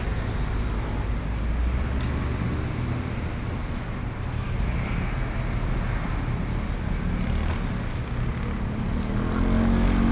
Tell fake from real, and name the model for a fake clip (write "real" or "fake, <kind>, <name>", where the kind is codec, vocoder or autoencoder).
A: real